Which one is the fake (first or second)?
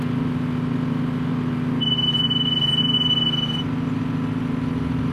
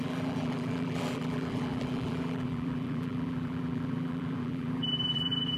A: second